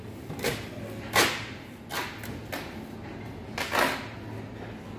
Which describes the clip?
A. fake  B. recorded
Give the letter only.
B